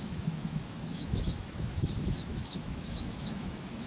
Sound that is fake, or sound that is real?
fake